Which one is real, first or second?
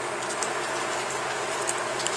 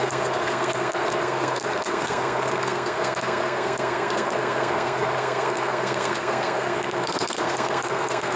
first